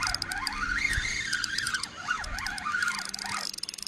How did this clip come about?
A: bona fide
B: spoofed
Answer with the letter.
A